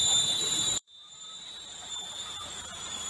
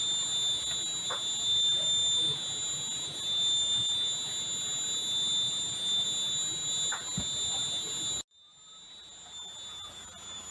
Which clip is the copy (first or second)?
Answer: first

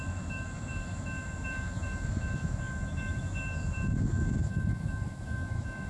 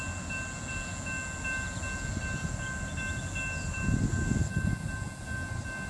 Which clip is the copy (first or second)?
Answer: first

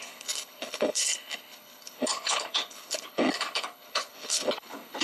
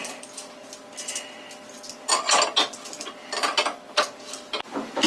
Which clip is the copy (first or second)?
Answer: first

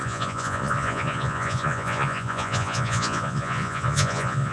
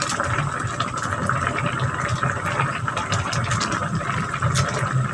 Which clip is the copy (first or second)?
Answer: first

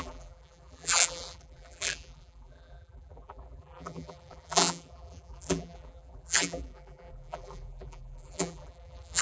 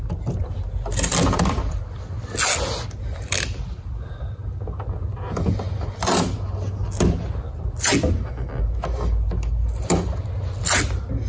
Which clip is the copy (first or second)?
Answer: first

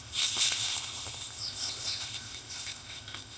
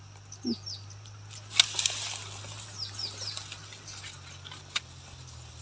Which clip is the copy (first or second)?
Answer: first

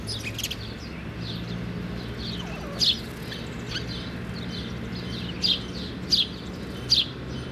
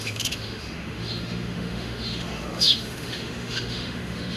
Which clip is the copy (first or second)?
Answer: second